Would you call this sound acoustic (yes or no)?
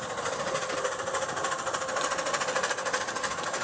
yes